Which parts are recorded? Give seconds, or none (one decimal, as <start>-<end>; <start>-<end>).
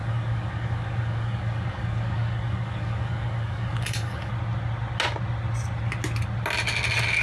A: 4.3-7.2